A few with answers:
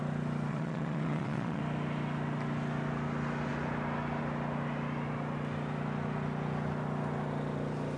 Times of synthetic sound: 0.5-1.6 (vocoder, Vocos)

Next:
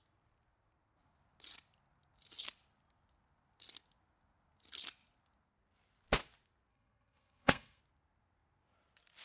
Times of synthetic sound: 6.7-7.8 (codec, SNAC)

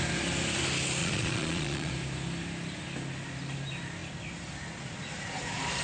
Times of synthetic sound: 1.0-1.9 (vocoder, Vocos)